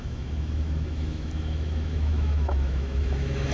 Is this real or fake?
fake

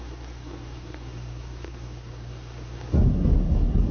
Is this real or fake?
fake